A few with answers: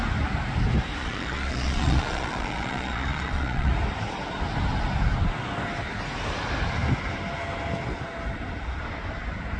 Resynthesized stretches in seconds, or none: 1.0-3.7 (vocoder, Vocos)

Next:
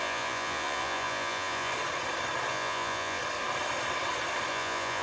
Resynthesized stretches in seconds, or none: 0.0-1.7 (vocoder, Vocos); 2.5-3.2; 4.5-5.0

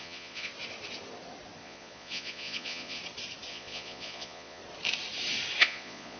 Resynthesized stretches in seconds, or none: 0.0-0.5 (vocoder, Vocos); 1.6-3.0; 3.5-4.6; 5.6-6.2

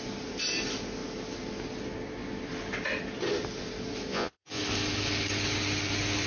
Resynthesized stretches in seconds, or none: 4.1-4.6 (vocoder, Vocos)

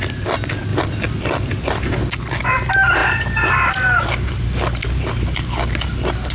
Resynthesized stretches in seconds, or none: none